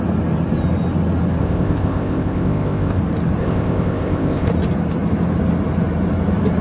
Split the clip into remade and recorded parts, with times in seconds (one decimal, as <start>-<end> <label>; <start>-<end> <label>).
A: 0.0-1.4 recorded; 1.4-3.0 remade; 3.0-3.4 recorded; 3.4-4.5 remade; 4.5-6.6 recorded